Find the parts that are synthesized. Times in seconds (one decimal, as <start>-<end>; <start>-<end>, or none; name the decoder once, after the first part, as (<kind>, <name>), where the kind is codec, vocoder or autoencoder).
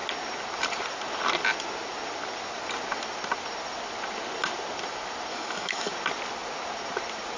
5.3-5.9 (autoencoder, DAC-VAE)